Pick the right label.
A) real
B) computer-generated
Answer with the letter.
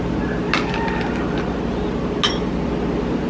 A